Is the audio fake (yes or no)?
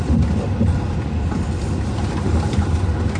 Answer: no